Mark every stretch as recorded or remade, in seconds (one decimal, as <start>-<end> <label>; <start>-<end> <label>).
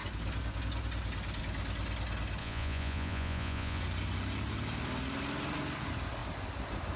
0.0-2.4 recorded; 2.4-3.8 remade; 3.8-7.0 recorded